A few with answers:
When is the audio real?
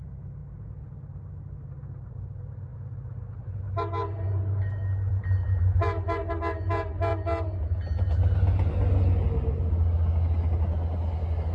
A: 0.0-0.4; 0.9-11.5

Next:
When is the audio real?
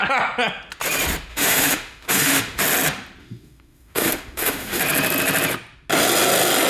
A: 0.0-1.3; 2.6-3.2; 4.8-6.7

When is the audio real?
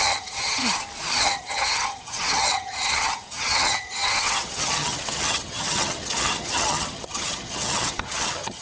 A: 0.6-1.2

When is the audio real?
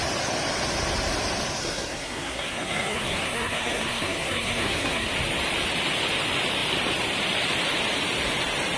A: 0.0-1.6; 5.1-8.8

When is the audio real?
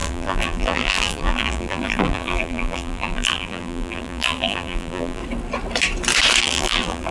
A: 5.2-6.4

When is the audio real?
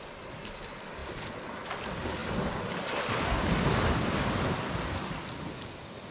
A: 0.0-6.1